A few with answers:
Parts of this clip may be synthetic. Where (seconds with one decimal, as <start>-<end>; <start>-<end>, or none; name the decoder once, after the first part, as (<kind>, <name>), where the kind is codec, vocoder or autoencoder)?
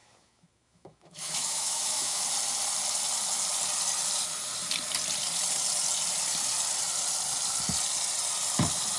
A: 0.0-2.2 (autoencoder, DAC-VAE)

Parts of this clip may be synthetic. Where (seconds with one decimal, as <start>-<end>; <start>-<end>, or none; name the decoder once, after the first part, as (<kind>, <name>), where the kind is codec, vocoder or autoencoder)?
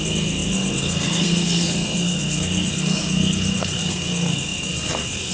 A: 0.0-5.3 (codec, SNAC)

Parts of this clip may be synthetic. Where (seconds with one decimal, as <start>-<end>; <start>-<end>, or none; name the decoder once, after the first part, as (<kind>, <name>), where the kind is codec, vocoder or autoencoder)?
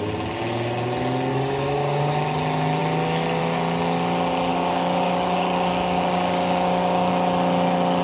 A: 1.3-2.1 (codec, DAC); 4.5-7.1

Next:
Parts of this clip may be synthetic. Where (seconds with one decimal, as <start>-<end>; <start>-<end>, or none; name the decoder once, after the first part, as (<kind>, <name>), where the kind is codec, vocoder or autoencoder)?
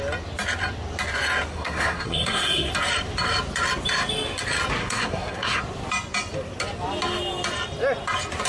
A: 1.5-2.7 (codec, SNAC); 4.8-5.6